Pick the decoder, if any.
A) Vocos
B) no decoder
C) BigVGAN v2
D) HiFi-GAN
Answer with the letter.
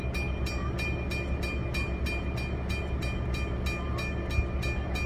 B